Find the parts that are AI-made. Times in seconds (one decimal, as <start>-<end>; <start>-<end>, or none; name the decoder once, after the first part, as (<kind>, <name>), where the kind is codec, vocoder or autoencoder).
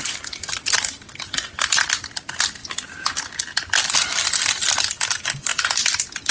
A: none